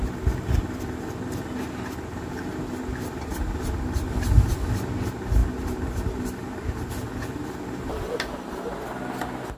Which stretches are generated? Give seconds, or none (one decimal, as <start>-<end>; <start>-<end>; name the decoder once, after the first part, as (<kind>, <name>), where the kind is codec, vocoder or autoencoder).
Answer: 5.4-6.9 (vocoder, BigVGAN v2)